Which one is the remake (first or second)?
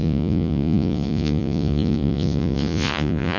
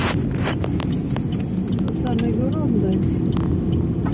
first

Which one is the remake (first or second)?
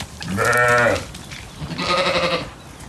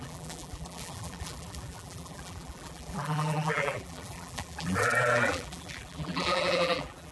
second